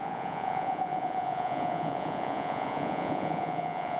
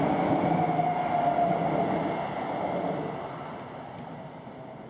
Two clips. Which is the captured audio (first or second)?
second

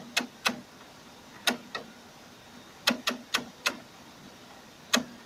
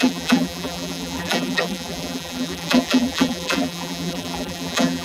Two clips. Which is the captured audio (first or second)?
first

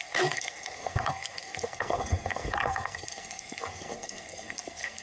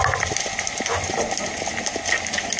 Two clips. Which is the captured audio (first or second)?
second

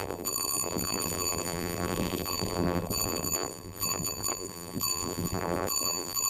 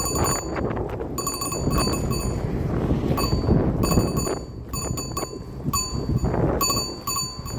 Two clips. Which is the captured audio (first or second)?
second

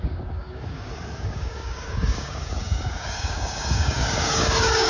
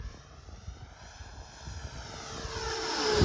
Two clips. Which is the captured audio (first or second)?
second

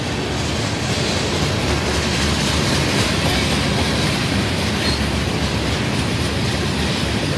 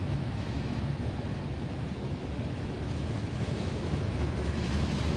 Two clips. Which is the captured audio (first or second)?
first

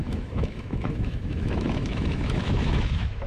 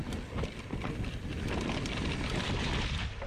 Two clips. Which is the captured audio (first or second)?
second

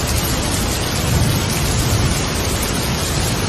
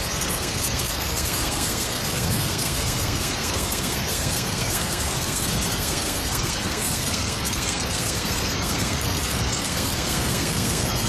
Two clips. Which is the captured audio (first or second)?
first